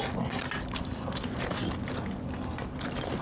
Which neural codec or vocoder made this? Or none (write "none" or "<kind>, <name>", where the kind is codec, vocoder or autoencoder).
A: none